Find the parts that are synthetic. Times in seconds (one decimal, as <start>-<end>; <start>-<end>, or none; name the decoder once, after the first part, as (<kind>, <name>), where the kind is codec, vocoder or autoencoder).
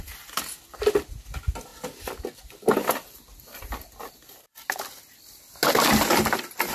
none